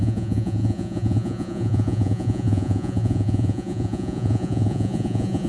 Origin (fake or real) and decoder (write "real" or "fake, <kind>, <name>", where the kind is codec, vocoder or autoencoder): fake, vocoder, Vocos